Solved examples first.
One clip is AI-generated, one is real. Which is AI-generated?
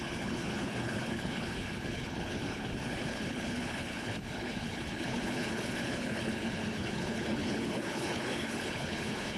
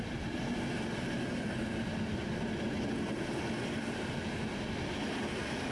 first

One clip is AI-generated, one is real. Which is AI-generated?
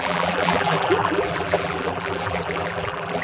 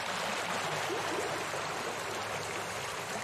first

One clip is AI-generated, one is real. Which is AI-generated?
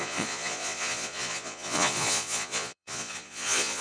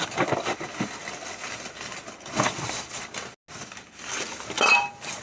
first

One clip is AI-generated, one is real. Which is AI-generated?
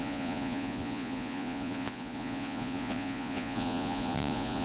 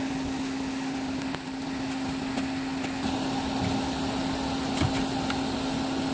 first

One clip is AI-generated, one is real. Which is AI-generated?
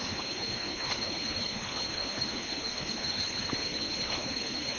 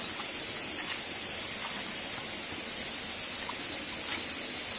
first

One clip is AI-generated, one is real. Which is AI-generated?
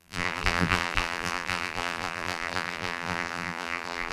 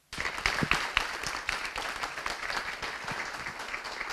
first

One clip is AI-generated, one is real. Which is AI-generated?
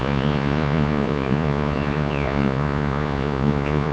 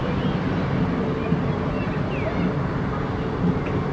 first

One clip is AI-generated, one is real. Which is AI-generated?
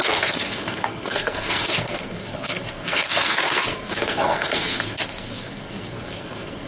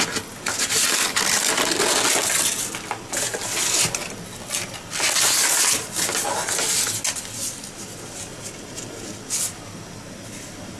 first